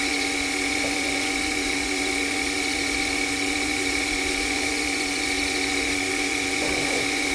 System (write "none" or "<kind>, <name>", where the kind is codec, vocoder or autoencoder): vocoder, Vocos